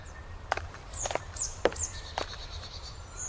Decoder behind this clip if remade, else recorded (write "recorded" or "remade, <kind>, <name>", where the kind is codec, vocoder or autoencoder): remade, vocoder, BigVGAN v2